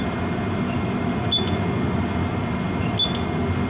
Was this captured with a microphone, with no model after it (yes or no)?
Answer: yes